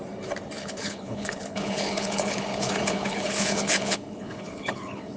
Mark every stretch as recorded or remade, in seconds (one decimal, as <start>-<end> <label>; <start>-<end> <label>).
0.0-0.6 recorded; 0.6-5.2 remade